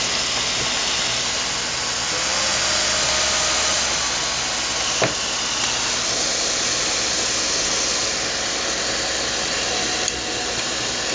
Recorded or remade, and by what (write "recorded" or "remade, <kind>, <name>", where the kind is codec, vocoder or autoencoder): recorded